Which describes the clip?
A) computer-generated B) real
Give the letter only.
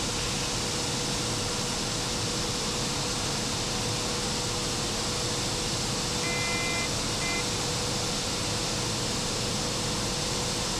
B